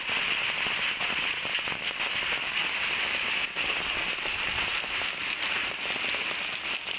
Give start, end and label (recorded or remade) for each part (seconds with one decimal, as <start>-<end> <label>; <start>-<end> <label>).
0.0-7.0 recorded